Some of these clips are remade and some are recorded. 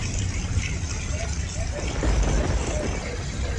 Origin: recorded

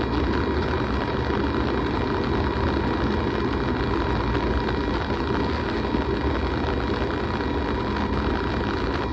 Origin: recorded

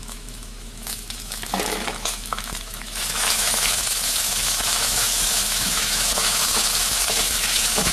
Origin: remade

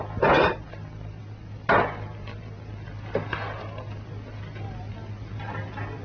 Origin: recorded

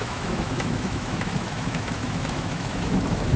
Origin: remade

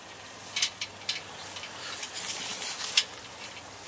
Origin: recorded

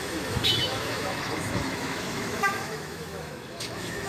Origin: remade